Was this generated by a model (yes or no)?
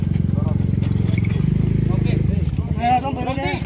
no